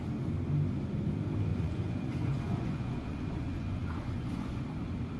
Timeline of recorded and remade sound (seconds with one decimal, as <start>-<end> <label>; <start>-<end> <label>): 0.0-1.5 recorded; 1.5-4.6 remade; 4.6-5.2 recorded